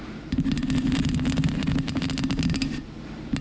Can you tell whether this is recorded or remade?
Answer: recorded